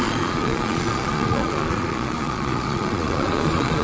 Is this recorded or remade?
remade